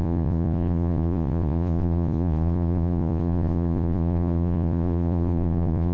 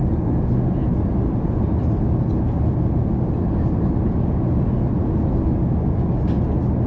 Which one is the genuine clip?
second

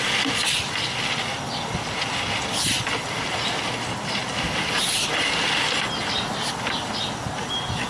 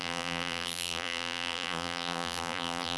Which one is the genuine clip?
first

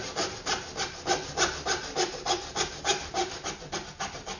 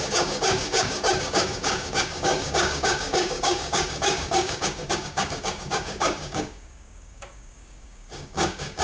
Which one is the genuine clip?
first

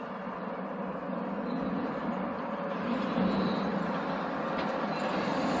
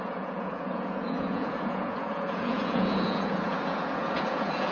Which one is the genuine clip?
first